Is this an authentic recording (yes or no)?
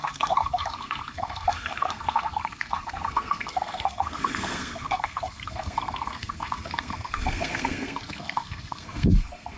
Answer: no